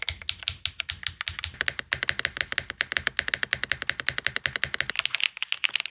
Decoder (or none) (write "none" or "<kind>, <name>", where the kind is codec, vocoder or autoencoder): none